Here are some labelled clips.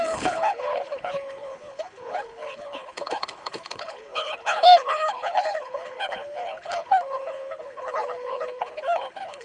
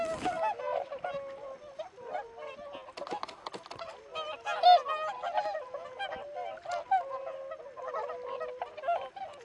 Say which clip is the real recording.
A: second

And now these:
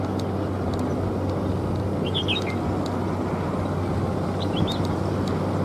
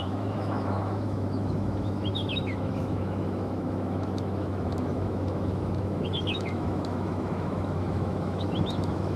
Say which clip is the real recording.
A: first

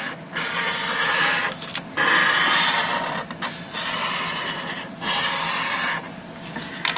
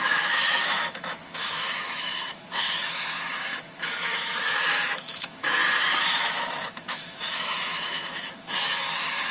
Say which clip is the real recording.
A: first